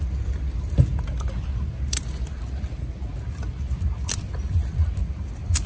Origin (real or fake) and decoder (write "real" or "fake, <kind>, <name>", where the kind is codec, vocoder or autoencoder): real